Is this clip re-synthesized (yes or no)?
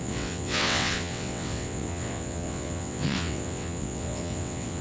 yes